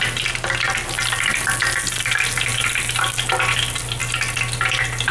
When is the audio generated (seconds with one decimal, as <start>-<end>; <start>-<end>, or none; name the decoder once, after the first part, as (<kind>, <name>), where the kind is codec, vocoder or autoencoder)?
none